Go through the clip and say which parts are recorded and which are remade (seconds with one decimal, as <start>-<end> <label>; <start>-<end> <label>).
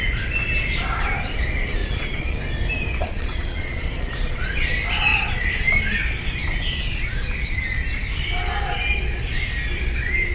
0.0-1.8 recorded; 1.8-2.4 remade; 2.4-3.0 recorded; 3.0-4.5 remade; 4.5-5.1 recorded; 5.1-5.7 remade; 5.7-10.3 recorded